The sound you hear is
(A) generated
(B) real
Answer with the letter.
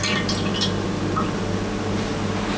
B